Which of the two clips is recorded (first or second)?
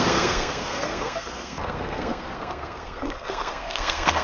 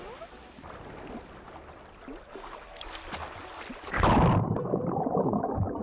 second